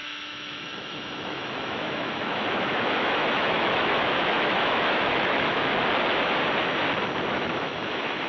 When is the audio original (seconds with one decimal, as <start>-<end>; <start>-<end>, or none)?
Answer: 5.7-7.2